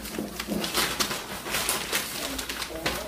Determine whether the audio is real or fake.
real